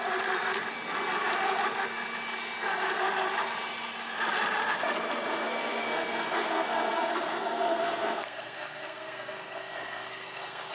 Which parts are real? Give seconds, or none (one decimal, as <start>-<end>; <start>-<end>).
0.0-5.4